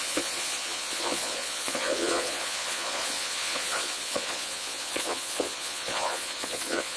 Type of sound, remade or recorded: remade